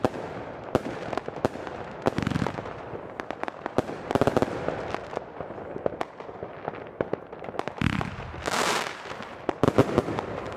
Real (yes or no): yes